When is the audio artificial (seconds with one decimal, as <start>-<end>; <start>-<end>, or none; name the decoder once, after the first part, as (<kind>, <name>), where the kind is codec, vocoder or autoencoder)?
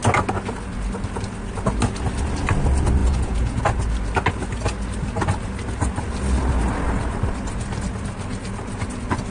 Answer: 3.0-3.6 (vocoder, Vocos)